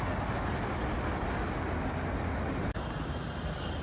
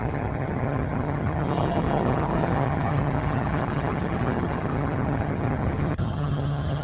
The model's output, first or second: second